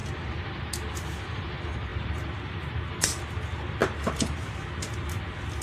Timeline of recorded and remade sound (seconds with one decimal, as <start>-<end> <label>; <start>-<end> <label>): 0.0-0.6 remade; 0.6-1.9 recorded; 1.9-3.2 remade; 3.2-3.8 recorded; 3.8-4.7 remade; 4.7-5.6 recorded